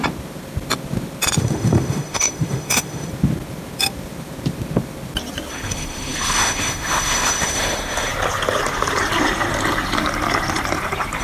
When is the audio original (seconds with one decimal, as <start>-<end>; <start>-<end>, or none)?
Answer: 0.0-1.4; 3.1-5.5; 8.1-11.2